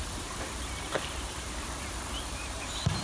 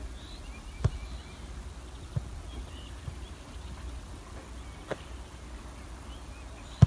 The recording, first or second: second